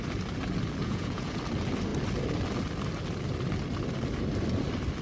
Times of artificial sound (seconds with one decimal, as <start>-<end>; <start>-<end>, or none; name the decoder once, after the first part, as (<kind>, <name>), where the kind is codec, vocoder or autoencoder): 0.8-1.4 (vocoder, Vocos)